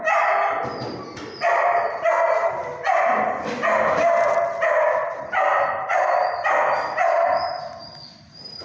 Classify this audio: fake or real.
real